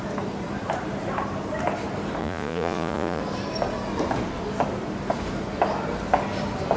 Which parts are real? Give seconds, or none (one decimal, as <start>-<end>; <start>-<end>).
0.0-2.2; 3.2-6.8